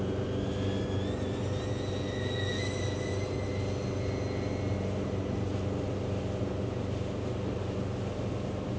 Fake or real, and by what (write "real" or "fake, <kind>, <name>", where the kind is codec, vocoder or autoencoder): real